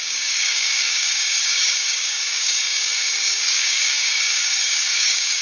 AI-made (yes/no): yes